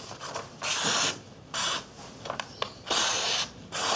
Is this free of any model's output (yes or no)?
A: yes